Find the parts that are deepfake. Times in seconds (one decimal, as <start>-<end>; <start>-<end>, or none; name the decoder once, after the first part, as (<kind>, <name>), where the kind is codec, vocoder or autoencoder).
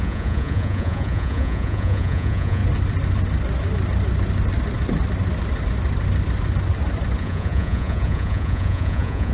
0.0-2.6 (vocoder, Vocos); 7.2-9.3